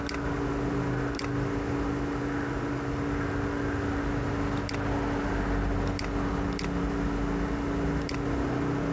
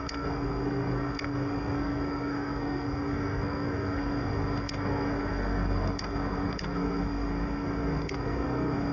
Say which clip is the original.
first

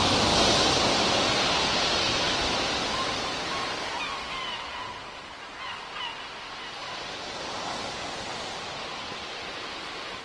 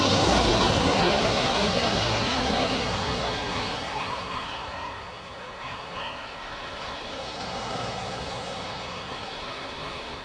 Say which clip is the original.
first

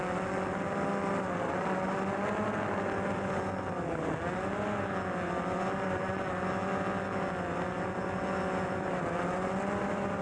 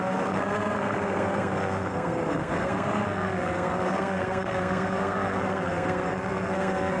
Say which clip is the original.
first